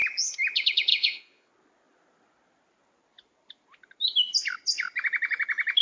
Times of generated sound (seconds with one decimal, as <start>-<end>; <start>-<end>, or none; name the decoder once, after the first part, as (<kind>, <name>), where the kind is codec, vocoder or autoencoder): 0.9-1.5 (vocoder, Vocos)